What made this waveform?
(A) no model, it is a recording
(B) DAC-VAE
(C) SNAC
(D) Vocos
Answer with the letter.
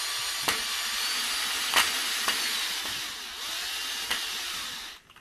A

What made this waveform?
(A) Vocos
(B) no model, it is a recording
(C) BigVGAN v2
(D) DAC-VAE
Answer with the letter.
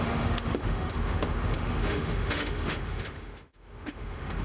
D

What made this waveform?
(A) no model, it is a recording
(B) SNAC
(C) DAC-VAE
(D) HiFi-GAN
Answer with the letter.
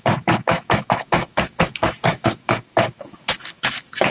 C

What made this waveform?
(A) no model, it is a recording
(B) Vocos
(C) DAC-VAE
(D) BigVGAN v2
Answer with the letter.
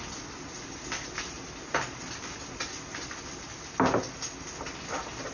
A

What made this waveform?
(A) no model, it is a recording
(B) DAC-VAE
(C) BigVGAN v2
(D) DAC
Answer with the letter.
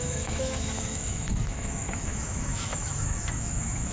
B